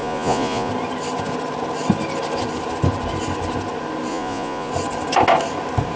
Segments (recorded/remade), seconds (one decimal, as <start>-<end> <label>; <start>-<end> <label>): 0.0-0.7 remade; 0.7-4.1 recorded; 4.1-4.7 remade; 4.7-6.0 recorded